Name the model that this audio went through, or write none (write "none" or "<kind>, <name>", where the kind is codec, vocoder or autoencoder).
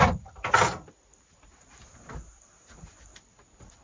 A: none